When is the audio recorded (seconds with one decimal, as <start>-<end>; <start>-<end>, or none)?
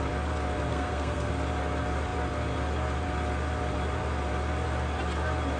0.0-0.7; 1.3-5.6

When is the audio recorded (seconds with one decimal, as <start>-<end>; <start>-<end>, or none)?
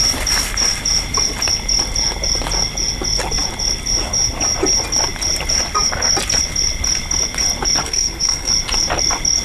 0.0-7.8; 8.5-9.4